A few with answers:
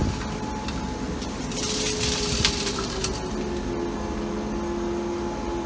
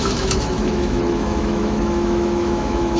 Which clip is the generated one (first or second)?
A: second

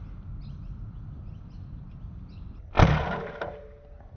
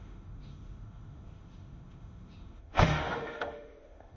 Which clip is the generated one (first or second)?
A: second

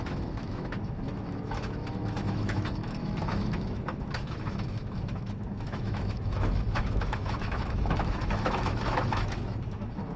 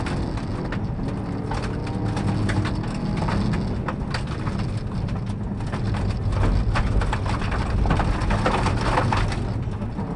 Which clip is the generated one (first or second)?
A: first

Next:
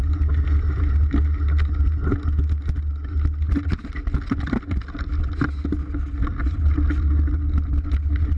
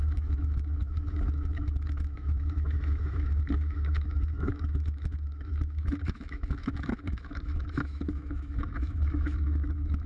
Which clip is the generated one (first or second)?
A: second